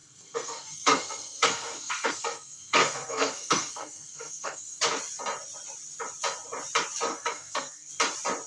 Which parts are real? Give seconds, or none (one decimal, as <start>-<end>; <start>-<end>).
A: 4.8-7.1; 7.9-8.5